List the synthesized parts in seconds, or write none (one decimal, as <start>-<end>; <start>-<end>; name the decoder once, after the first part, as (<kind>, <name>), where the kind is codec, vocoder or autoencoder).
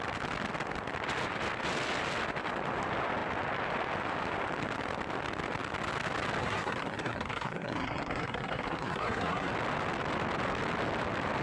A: 6.4-9.5 (codec, SNAC)